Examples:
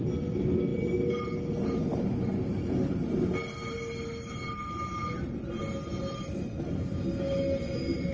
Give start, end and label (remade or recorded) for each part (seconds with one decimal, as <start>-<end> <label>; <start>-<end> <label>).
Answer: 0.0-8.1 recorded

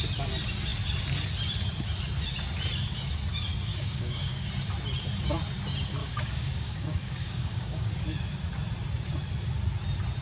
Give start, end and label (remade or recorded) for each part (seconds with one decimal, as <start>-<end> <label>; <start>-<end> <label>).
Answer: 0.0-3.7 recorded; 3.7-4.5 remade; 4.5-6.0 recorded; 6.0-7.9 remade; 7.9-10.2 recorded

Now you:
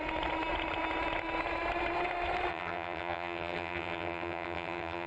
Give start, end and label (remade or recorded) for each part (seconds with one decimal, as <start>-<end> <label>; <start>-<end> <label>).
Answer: 0.0-2.5 recorded; 2.5-5.1 remade